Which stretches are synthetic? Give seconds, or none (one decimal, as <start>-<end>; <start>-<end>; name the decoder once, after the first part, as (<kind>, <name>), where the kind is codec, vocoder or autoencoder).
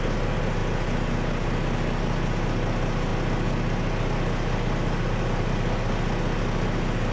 none